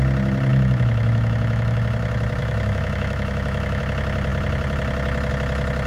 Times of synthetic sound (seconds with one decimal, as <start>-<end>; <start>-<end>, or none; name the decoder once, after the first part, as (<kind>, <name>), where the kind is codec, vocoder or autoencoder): 0.5-1.8 (autoencoder, DAC-VAE); 2.4-3.8